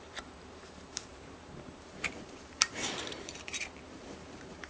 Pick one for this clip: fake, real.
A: fake